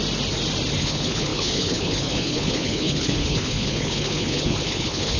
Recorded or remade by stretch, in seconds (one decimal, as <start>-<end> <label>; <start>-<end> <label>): 0.0-0.8 recorded; 0.8-5.2 remade